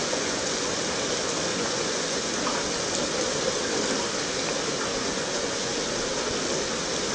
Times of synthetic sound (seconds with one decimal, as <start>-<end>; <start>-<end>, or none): 0.0-0.8; 1.5-2.3; 4.9-5.7